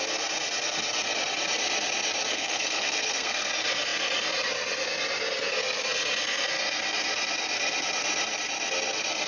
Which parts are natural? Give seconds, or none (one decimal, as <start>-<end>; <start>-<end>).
0.0-2.3; 3.5-9.3